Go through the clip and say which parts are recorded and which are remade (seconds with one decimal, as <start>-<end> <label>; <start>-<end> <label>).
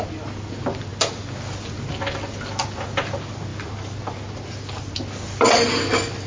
0.0-6.3 recorded